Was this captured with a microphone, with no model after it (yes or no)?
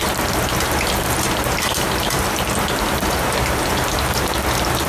no